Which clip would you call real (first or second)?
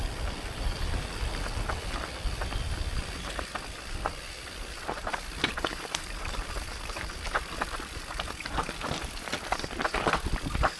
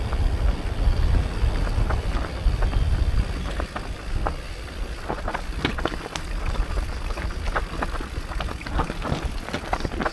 second